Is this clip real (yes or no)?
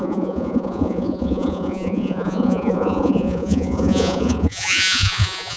no